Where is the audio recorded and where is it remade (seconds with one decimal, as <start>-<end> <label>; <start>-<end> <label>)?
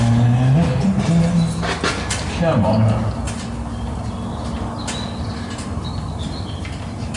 0.0-7.2 recorded